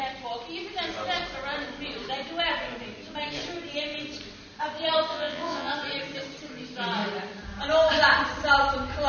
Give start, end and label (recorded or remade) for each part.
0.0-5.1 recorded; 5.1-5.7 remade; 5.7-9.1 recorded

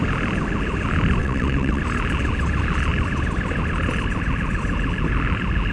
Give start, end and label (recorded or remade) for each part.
0.0-1.2 recorded; 1.2-1.8 remade; 1.8-5.7 recorded

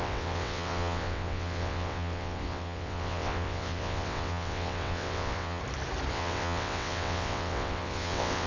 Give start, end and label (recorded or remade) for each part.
0.0-5.6 remade; 5.6-6.1 recorded; 6.1-8.5 remade

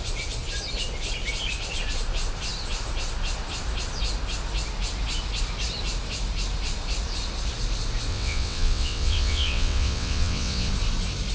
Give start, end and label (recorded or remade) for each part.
0.0-8.1 recorded; 8.1-10.7 remade; 10.7-11.3 recorded

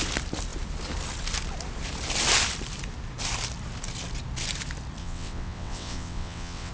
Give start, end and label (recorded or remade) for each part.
0.0-5.0 recorded; 5.0-6.7 remade